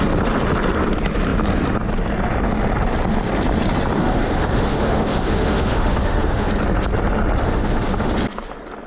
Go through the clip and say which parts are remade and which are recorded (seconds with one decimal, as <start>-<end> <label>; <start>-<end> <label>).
0.0-4.0 recorded; 4.0-6.5 remade; 6.5-7.4 recorded; 7.4-8.1 remade; 8.1-8.9 recorded